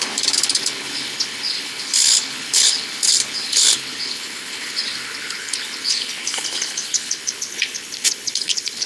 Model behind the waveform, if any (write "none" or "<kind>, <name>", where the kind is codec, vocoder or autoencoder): codec, HILCodec